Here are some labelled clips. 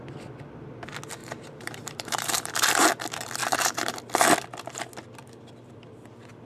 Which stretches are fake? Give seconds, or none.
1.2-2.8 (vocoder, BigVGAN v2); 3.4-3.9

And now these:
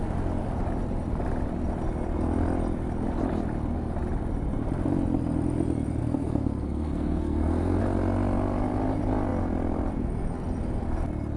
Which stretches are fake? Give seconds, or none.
6.0-7.8 (codec, SNAC)

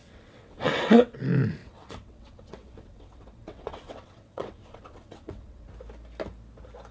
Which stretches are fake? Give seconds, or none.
0.0-1.2 (vocoder, WaveNeXt); 1.6-5.7